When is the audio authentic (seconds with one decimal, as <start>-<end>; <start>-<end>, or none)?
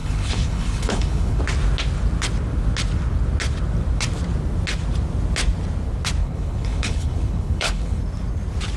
1.4-6.2; 8.0-8.8